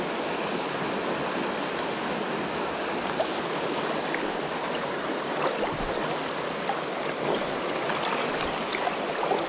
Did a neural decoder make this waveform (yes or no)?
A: no